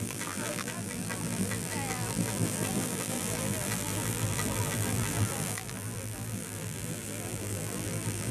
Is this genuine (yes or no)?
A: no